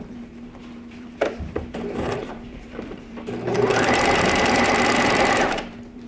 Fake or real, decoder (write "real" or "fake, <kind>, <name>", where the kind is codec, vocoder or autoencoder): fake, vocoder, BigVGAN v2